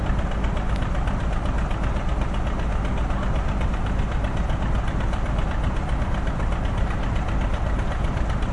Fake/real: real